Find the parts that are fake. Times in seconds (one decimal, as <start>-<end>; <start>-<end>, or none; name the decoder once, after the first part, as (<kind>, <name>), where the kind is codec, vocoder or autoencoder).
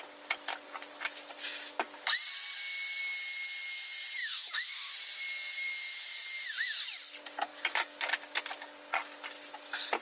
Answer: 4.2-4.9 (autoencoder, DAC-VAE)